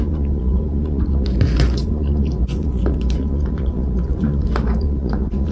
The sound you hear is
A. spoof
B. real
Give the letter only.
A